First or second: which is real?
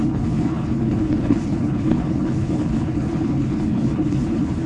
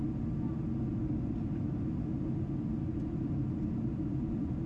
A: second